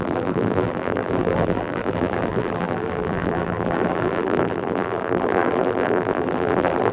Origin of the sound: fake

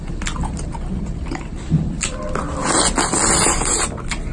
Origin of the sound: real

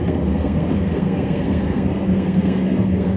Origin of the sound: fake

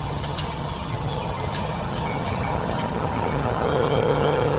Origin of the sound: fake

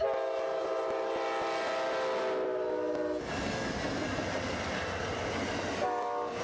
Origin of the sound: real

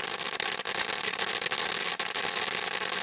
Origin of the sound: real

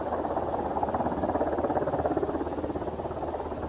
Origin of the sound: real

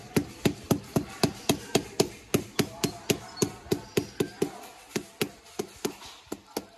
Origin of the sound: real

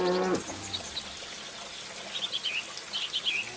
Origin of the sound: real